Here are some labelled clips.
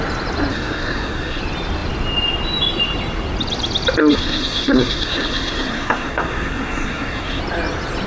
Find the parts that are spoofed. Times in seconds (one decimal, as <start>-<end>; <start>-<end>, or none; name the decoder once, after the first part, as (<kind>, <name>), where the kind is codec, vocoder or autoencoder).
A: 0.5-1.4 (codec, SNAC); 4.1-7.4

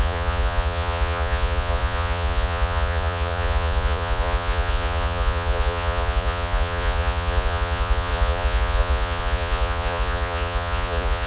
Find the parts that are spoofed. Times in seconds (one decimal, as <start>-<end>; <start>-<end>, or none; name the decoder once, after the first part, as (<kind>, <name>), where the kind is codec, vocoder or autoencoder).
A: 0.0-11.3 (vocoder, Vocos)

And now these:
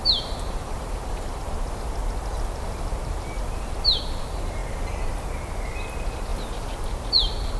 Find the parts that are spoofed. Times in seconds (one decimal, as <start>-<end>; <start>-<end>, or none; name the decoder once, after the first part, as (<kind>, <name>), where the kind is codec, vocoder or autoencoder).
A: 0.0-1.4 (vocoder, BigVGAN v2); 2.3-4.6; 5.7-6.3; 6.8-7.6